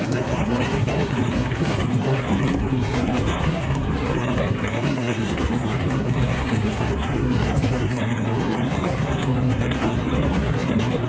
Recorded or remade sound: remade